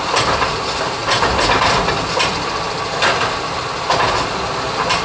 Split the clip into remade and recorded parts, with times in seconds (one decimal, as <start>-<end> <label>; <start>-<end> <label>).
0.0-5.0 recorded